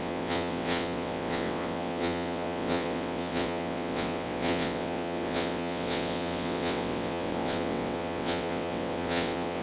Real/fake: fake